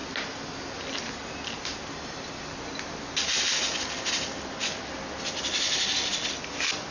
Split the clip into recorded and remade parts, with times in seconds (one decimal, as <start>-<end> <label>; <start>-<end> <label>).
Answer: 0.0-6.9 recorded